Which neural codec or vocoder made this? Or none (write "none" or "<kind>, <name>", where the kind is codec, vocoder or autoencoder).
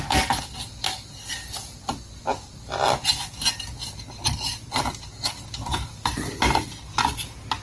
none